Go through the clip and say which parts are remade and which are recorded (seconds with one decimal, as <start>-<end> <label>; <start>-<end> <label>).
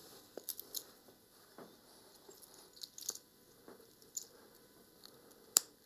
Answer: 0.0-1.2 recorded; 1.2-5.9 remade